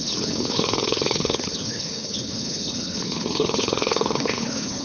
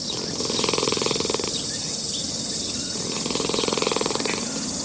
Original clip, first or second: second